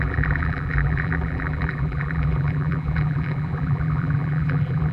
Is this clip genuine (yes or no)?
no